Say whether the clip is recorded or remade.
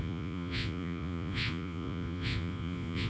remade